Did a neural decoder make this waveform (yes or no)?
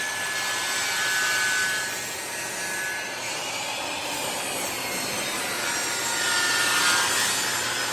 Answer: no